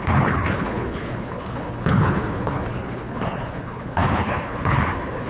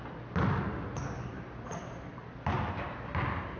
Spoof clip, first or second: first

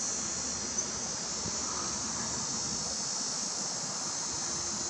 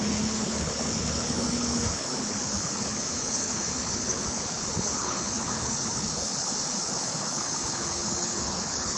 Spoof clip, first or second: second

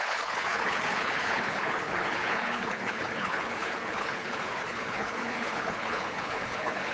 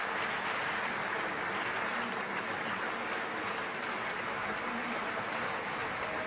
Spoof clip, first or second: first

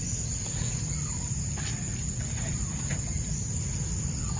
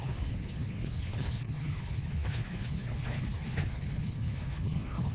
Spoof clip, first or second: second